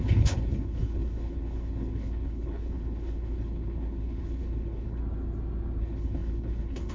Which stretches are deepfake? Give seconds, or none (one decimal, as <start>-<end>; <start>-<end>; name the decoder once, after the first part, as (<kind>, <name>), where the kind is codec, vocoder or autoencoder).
0.0-5.0 (codec, HILCodec); 5.8-6.9